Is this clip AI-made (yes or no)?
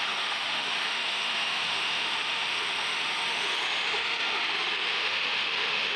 yes